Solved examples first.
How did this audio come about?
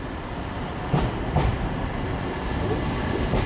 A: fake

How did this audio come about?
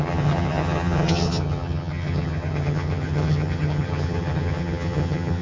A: fake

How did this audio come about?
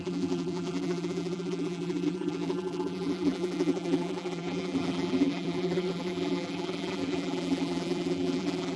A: fake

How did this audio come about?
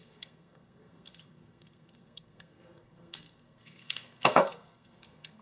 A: fake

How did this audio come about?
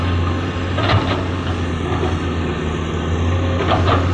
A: real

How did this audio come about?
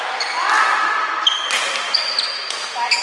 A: real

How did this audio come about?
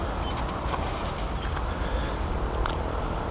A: real